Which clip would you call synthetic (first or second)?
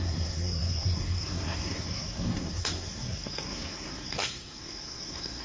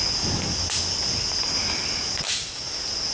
first